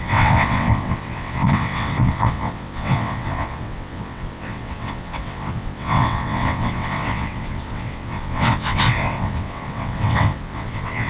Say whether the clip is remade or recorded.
remade